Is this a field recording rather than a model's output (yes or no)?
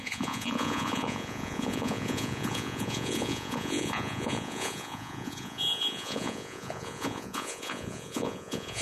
no